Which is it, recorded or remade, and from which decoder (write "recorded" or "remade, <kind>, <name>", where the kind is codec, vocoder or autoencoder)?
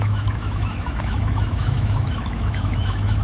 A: remade, autoencoder, DAC-VAE